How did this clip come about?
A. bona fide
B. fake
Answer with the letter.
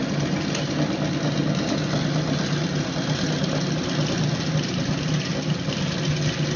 A